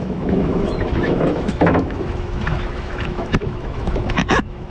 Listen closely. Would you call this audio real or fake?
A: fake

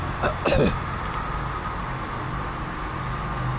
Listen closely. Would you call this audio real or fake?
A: real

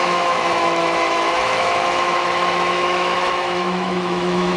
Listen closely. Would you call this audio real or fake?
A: fake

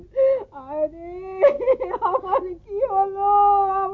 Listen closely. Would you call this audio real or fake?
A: real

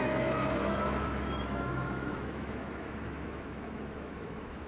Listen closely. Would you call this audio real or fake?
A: fake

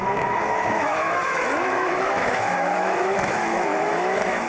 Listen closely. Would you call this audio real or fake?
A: fake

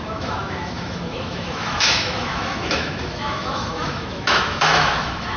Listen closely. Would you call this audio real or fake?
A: fake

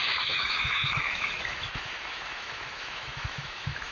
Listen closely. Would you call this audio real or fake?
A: fake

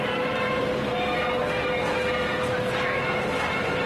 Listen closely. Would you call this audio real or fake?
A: real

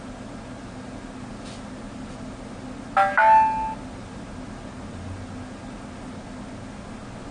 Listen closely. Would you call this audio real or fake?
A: real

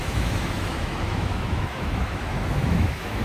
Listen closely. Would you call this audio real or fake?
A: fake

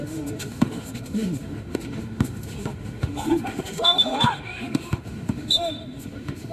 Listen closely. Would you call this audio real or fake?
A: fake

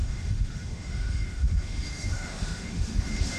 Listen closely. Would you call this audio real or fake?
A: fake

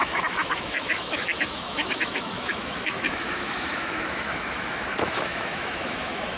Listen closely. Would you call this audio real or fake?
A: fake